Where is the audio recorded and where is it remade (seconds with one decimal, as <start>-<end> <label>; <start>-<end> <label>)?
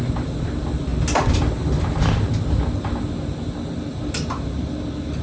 0.0-5.2 recorded